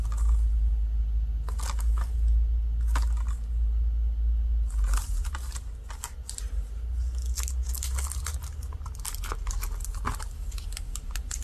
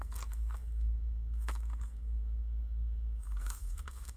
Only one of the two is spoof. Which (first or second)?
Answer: second